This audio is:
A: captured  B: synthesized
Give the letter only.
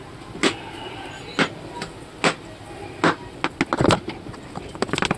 A